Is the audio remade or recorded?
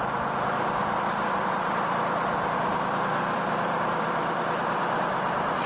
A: remade